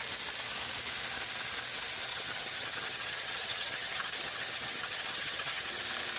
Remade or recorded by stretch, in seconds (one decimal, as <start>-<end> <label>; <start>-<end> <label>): 0.0-2.1 recorded; 2.1-5.8 remade; 5.8-6.2 recorded